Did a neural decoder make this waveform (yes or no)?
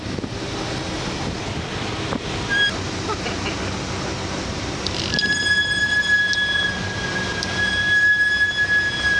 no